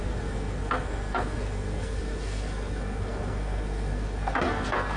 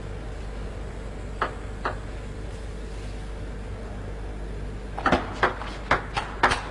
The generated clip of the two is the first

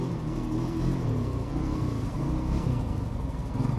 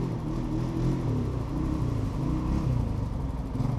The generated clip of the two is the first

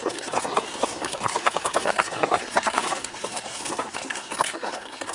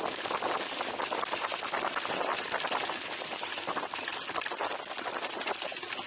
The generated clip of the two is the first